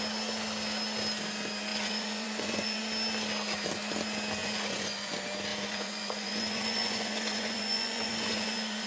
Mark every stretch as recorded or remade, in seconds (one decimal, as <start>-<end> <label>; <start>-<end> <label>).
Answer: 0.0-1.7 recorded; 1.7-2.8 remade; 2.8-4.4 recorded; 4.4-5.1 remade; 5.1-5.5 recorded; 5.5-8.9 remade